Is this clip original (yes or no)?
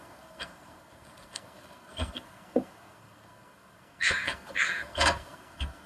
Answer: no